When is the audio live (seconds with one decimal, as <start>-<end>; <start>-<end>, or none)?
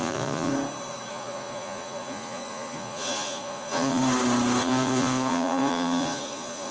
0.5-1.1; 4.0-4.6